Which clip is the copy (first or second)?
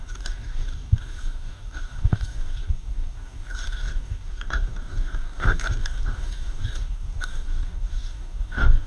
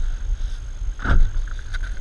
first